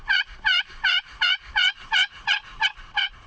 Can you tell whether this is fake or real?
fake